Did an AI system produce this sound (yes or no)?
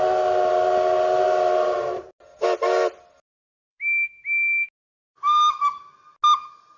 no